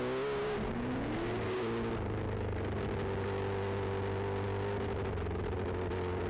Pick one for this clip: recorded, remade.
recorded